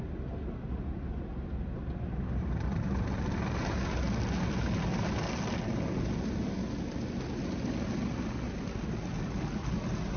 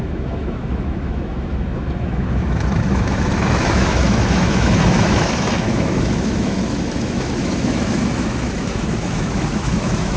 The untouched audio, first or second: first